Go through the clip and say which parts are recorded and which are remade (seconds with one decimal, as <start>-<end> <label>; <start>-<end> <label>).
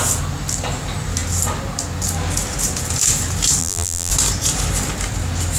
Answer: 0.0-3.6 recorded; 3.6-4.1 remade; 4.1-5.6 recorded